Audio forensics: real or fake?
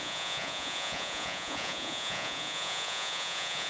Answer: fake